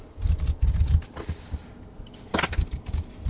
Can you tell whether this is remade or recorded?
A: recorded